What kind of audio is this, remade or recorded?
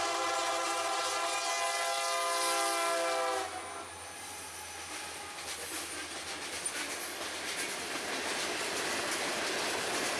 recorded